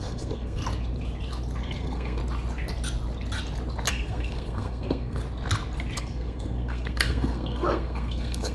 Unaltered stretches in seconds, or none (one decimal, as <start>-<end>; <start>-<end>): 0.6-1.6; 2.2-3.9; 5.2-6.0